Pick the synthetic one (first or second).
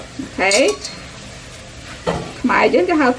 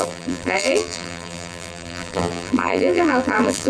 second